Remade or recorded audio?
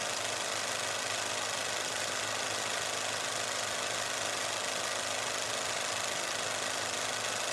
recorded